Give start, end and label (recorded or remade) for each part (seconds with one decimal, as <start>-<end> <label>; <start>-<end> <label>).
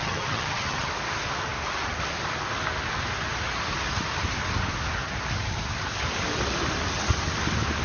0.0-0.9 remade; 0.9-7.8 recorded